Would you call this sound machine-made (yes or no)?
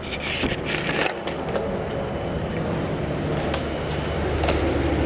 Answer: no